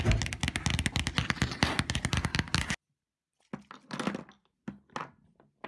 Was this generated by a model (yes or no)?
no